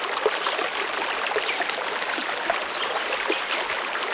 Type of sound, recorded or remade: recorded